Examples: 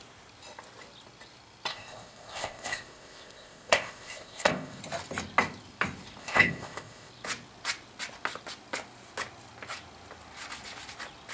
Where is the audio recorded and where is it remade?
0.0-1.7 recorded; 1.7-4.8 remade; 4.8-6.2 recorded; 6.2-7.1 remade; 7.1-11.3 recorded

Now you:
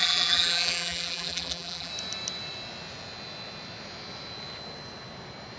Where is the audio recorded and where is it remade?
0.0-1.9 remade; 1.9-5.6 recorded

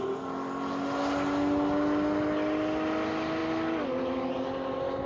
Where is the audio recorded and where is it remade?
0.0-5.1 recorded

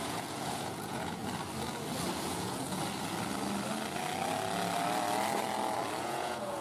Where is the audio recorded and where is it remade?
0.0-1.2 remade; 1.2-2.2 recorded; 2.2-2.8 remade; 2.8-6.0 recorded; 6.0-6.6 remade